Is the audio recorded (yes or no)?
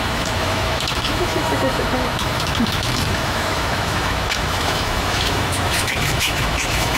no